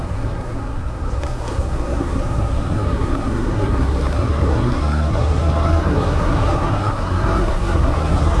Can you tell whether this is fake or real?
fake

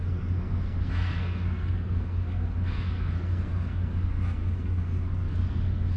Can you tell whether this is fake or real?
fake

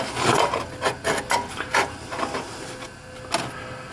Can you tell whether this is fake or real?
real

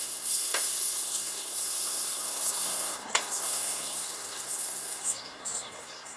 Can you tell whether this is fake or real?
fake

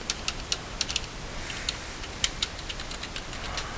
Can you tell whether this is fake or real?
real